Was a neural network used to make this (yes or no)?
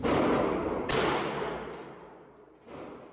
no